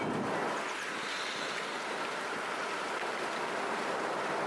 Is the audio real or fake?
real